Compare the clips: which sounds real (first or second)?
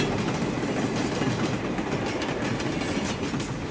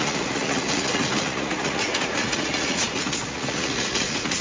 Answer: first